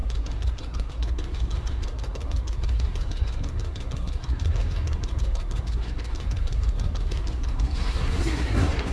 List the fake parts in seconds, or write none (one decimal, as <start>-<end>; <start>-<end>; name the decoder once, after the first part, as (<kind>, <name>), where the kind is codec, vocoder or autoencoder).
0.0-8.9 (codec, SNAC)